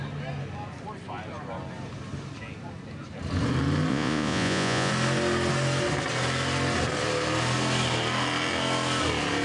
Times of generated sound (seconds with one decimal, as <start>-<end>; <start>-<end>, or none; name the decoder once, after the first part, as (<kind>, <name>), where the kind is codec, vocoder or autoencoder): 3.9-4.9 (vocoder, Vocos)